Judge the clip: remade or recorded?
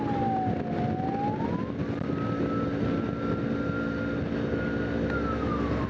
recorded